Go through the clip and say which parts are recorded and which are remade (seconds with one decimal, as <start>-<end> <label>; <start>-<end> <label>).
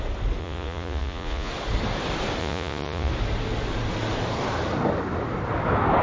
0.0-0.4 recorded; 0.4-1.5 remade; 1.5-2.4 recorded; 2.4-3.1 remade; 3.1-6.0 recorded